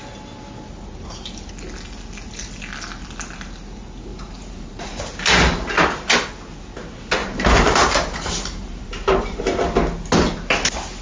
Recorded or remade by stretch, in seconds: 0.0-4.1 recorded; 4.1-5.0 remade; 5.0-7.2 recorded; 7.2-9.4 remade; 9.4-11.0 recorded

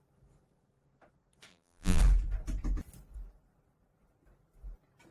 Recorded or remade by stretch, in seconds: 0.0-1.5 recorded; 1.5-2.0 remade; 2.0-5.1 recorded